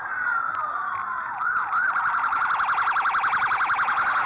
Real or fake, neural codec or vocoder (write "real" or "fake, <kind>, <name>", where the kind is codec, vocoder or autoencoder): real